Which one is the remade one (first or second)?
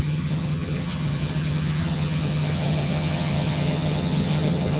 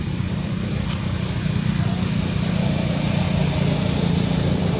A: first